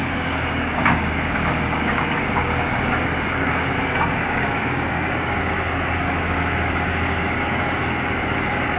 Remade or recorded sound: remade